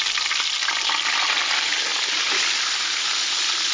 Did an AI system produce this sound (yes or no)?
no